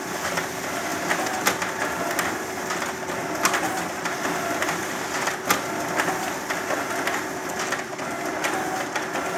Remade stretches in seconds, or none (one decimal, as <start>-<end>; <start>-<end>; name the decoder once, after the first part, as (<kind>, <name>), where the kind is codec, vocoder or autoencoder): 0.0-0.9 (vocoder, BigVGAN v2); 2.6-9.4